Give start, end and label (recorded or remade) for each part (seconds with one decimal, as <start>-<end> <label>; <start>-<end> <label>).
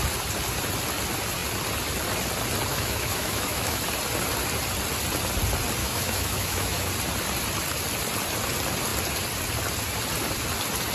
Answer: 0.0-2.7 recorded; 2.7-3.8 remade; 3.8-5.8 recorded; 5.8-6.9 remade; 6.9-10.9 recorded